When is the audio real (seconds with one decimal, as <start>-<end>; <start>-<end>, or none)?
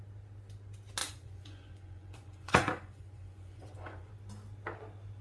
0.0-1.0; 4.1-5.2